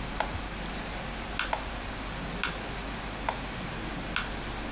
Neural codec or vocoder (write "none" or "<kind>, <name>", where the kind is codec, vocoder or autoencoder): none